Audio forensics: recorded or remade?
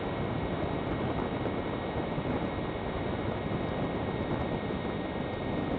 recorded